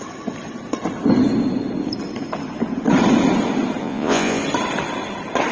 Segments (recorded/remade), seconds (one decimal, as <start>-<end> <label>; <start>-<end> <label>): 0.0-3.8 recorded; 3.8-4.4 remade; 4.4-5.5 recorded